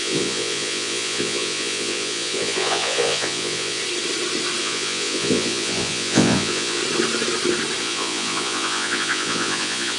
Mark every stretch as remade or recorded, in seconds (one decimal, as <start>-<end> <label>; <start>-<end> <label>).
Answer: 0.0-3.8 remade; 3.8-4.6 recorded; 4.6-6.8 remade; 6.8-7.8 recorded; 7.8-10.0 remade